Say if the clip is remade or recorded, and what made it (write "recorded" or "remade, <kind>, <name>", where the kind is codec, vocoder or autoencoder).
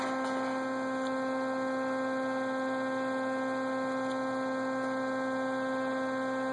recorded